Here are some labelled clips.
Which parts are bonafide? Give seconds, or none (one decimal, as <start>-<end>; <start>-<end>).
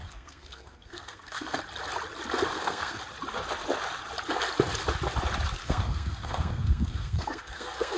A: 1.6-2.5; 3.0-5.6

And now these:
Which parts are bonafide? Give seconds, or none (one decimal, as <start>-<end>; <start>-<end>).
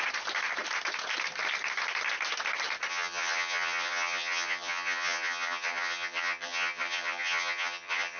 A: 0.0-2.9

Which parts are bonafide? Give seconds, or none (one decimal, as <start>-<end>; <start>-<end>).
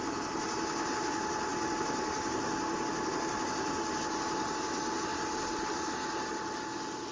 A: 0.0-7.1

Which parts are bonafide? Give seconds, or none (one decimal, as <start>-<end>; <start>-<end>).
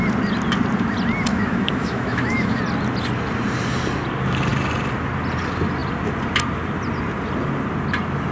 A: 0.0-1.3; 2.6-8.3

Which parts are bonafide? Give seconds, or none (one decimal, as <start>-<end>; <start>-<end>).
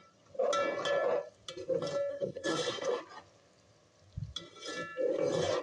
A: 0.0-2.1; 3.0-5.6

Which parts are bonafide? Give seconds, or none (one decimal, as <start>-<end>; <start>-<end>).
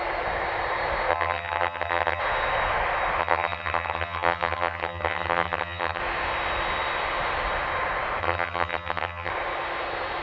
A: 0.0-1.1; 2.2-3.2; 6.0-8.2; 9.3-10.2